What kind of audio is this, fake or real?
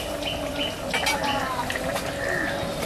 real